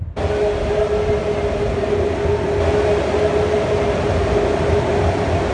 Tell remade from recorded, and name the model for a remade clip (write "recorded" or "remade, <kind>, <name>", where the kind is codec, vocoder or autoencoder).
recorded